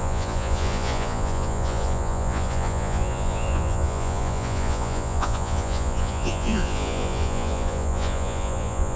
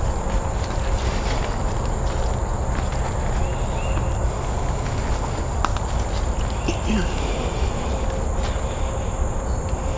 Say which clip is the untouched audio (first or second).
second